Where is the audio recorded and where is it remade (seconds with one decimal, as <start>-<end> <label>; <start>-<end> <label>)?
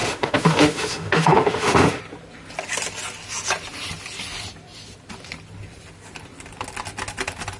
0.0-2.0 remade; 2.0-7.6 recorded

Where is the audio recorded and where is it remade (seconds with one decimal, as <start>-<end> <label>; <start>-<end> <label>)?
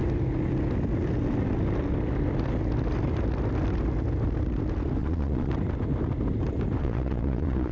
0.0-5.0 recorded; 5.0-5.5 remade; 5.5-6.8 recorded; 6.8-7.7 remade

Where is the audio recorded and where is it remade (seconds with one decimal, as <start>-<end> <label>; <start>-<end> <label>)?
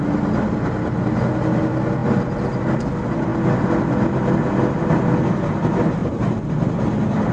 0.0-6.0 recorded; 6.0-6.5 remade; 6.5-7.3 recorded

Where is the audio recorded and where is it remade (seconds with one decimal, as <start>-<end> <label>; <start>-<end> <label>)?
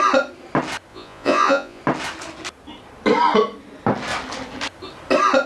0.0-0.9 recorded; 0.9-1.8 remade; 1.8-5.5 recorded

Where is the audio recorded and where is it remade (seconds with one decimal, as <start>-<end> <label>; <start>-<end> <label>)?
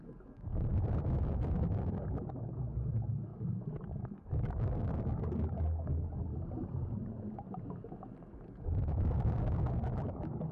0.0-0.7 remade; 0.7-1.2 recorded; 1.2-3.3 remade; 3.3-4.0 recorded; 4.0-6.3 remade; 6.3-8.6 recorded; 8.6-10.5 remade